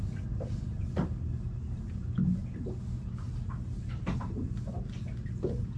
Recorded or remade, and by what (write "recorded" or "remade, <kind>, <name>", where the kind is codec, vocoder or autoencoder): recorded